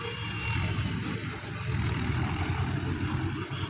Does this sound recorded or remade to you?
recorded